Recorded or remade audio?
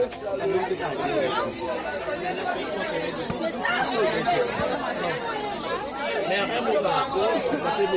recorded